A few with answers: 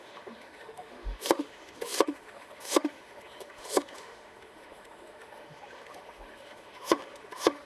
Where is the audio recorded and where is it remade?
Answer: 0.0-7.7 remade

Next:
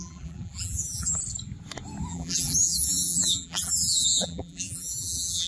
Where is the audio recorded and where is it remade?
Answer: 0.0-1.2 remade; 1.2-2.1 recorded; 2.1-5.5 remade

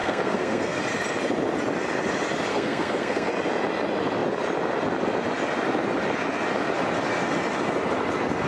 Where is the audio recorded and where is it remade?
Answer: 0.0-0.8 remade; 0.8-2.5 recorded; 2.5-3.3 remade; 3.3-8.5 recorded

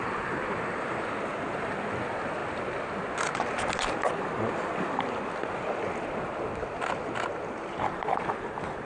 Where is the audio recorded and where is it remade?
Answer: 0.0-8.9 recorded

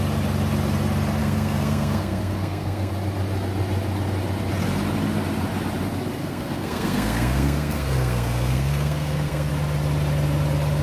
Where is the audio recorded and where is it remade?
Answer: 0.0-1.2 recorded; 1.2-2.9 remade; 2.9-6.2 recorded; 6.2-9.5 remade; 9.5-10.8 recorded

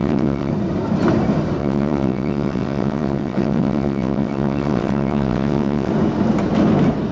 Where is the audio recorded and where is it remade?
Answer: 0.0-0.5 remade; 0.5-1.6 recorded; 1.6-5.9 remade; 5.9-7.1 recorded

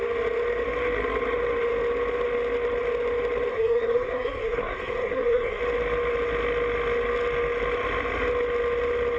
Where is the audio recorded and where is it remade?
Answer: 0.0-3.5 recorded; 3.5-5.6 remade; 5.6-9.2 recorded